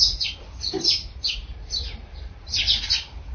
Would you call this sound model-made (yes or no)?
yes